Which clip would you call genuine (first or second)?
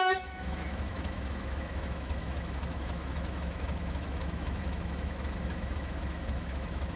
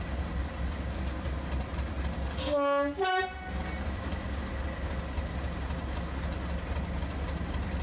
second